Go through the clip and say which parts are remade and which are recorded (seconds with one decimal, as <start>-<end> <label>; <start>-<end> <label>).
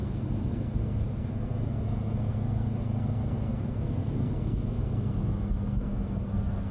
0.0-6.7 remade